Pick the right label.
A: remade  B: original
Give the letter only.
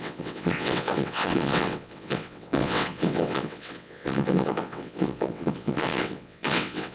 A